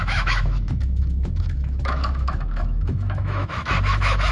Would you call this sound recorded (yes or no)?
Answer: no